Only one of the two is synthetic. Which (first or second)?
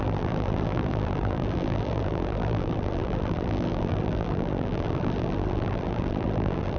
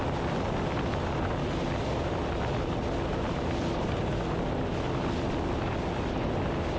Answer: first